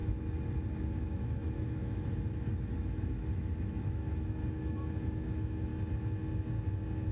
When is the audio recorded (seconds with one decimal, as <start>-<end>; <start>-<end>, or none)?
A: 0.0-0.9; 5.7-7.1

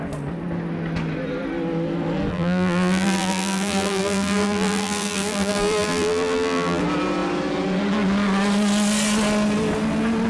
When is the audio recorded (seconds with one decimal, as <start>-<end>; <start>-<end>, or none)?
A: 0.0-2.3; 6.8-10.3

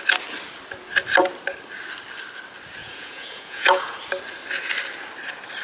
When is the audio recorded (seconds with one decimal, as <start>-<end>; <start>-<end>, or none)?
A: 0.0-2.8; 4.0-5.6

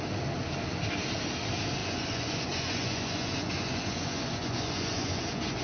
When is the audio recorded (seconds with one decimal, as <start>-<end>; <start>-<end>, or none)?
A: 0.0-1.8

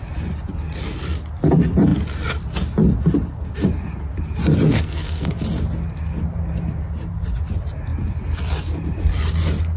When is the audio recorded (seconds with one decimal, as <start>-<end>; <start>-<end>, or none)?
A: 0.0-4.7; 5.3-9.8

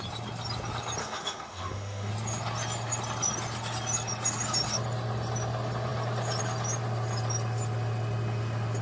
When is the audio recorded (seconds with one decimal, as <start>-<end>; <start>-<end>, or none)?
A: 0.0-1.0; 2.1-8.8

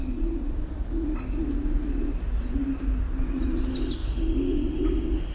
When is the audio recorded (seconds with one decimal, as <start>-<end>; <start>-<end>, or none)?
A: 0.7-2.6; 3.6-5.3

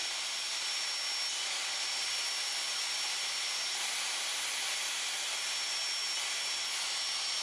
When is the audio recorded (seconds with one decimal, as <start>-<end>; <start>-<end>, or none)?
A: 0.0-7.4